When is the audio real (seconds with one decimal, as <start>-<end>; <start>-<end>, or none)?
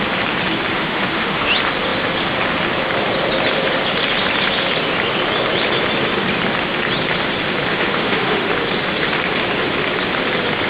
0.0-0.8; 1.5-7.7; 8.5-10.7